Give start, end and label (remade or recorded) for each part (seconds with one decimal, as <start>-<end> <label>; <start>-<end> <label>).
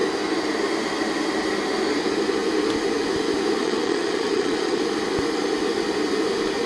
0.0-3.6 recorded; 3.6-4.8 remade; 4.8-6.7 recorded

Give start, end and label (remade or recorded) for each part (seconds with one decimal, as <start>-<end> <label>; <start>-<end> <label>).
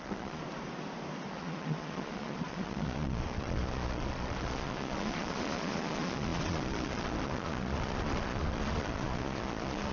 0.0-0.4 remade; 0.4-1.3 recorded; 1.3-9.9 remade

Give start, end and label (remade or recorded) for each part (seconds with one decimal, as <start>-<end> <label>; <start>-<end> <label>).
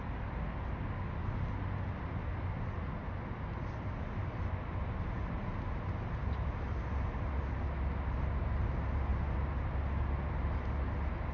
0.0-11.3 recorded